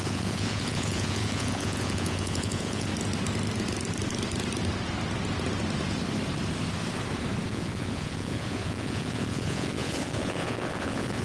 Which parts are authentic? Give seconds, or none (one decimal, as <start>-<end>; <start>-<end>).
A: 2.9-7.5